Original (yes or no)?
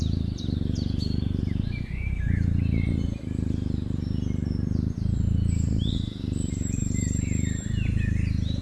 no